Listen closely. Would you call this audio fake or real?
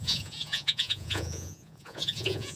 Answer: fake